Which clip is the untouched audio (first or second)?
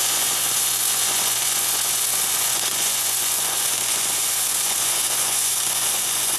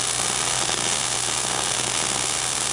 second